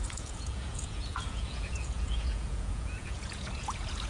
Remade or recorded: remade